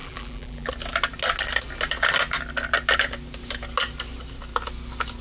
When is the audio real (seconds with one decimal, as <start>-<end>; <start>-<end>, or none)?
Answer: 0.7-5.2